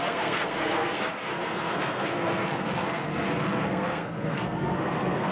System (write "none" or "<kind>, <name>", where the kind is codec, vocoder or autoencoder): codec, SNAC